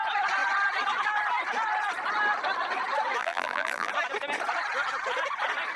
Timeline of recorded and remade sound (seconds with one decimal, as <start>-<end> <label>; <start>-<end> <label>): 0.0-3.2 recorded; 3.2-3.9 remade; 3.9-5.8 recorded